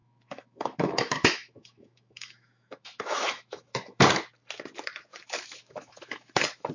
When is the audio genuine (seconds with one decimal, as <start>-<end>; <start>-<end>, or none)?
4.0-5.1

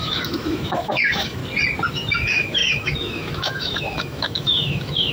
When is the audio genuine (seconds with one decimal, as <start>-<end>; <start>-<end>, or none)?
1.4-1.9

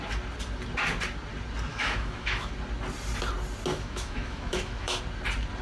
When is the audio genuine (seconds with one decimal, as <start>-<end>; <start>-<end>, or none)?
0.0-1.7; 2.5-3.7; 5.0-5.6

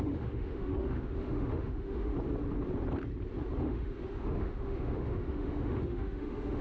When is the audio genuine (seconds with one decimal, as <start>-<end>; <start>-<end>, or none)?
2.1-3.6